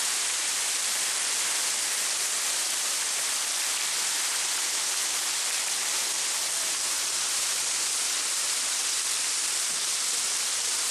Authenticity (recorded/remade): remade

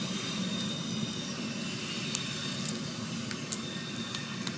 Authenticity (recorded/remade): recorded